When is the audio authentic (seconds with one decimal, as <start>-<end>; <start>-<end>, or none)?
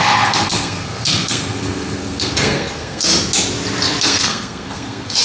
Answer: 3.1-4.0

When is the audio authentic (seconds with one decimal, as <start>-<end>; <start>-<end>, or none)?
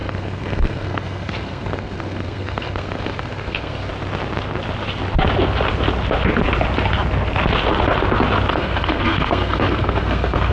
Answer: 3.9-8.5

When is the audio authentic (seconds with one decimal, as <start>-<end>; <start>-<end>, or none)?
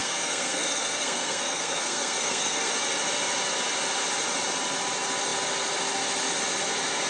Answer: 2.7-7.1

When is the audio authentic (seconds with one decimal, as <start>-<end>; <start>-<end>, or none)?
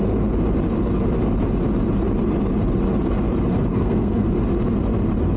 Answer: 0.0-3.7; 4.3-5.4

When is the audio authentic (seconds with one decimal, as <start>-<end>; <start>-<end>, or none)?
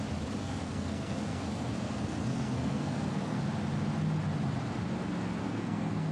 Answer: 0.0-0.4; 3.4-5.4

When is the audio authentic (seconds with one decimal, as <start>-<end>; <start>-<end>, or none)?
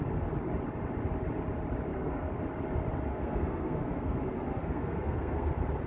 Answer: 0.0-1.9; 2.4-3.1; 5.5-5.9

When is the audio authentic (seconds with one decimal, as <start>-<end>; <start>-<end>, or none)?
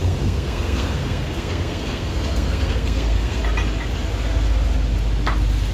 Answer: 3.4-5.7